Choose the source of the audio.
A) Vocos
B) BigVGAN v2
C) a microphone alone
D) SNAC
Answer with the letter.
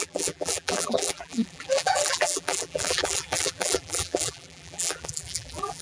B